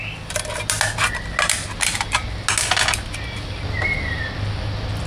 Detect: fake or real real